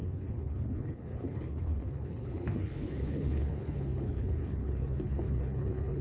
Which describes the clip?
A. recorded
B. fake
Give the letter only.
B